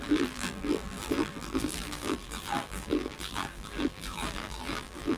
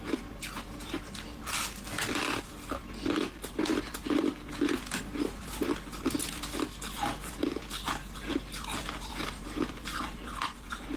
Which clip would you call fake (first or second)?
first